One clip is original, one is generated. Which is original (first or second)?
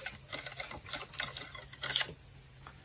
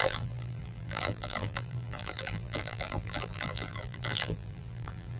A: first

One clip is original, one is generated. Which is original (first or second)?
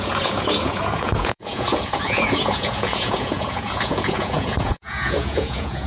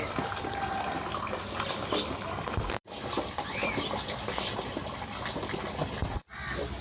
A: second